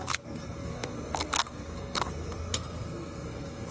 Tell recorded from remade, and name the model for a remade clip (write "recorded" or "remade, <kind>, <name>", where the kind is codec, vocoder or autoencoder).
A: remade, codec, SNAC